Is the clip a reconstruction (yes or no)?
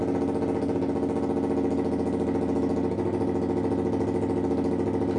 no